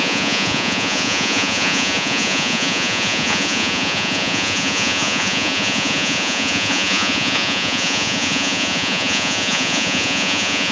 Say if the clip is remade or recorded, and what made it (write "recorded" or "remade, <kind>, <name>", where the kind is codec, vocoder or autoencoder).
remade, vocoder, Vocos